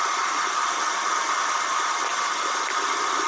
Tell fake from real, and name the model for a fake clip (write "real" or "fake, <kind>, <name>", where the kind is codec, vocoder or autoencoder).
real